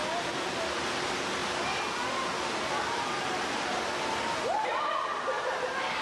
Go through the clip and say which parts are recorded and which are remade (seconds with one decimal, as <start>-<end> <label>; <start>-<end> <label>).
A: 0.0-6.0 recorded